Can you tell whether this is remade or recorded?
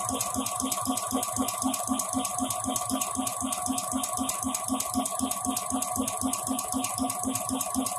recorded